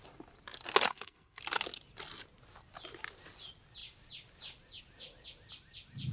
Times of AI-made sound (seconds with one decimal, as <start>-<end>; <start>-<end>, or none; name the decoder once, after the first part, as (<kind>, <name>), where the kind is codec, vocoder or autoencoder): 0.9-1.4 (codec, SNAC)